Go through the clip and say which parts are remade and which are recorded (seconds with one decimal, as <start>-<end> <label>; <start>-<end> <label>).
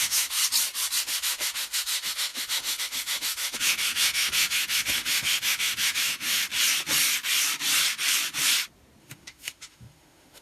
0.0-0.4 remade; 0.4-1.0 recorded; 1.0-6.5 remade; 6.5-9.0 recorded; 9.0-10.4 remade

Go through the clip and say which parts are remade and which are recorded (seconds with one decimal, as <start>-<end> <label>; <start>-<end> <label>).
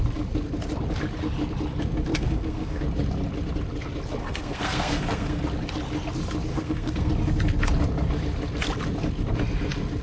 0.0-2.1 recorded; 2.1-2.8 remade; 2.8-4.2 recorded; 4.2-5.4 remade; 5.4-6.5 recorded; 6.5-7.1 remade; 7.1-10.0 recorded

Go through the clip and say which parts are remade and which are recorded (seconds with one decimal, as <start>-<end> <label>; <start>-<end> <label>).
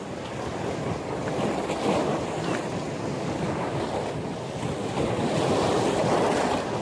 0.0-3.1 recorded; 3.1-3.8 remade; 3.8-4.8 recorded; 4.8-5.3 remade; 5.3-6.8 recorded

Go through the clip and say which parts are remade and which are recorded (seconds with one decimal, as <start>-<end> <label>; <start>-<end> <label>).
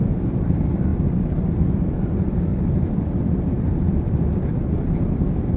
0.0-5.6 remade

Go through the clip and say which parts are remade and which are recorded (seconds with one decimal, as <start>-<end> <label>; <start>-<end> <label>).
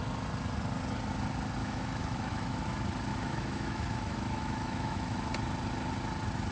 0.0-1.6 recorded; 1.6-2.6 remade; 2.6-3.1 recorded; 3.1-5.3 remade; 5.3-6.5 recorded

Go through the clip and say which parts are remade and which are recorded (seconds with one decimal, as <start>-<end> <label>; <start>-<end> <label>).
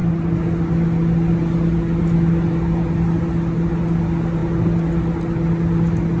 0.0-6.2 recorded